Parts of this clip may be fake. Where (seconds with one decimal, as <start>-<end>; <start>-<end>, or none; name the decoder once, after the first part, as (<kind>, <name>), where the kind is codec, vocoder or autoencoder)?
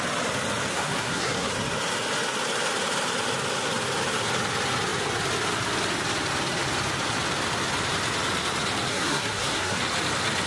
0.7-1.5 (codec, SNAC); 8.9-9.8